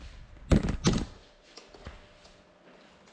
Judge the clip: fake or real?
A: real